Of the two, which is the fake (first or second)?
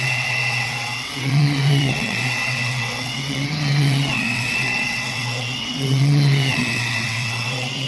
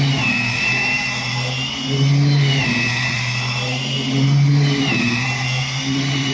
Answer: first